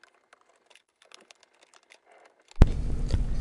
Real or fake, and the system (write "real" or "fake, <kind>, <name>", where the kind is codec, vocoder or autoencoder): real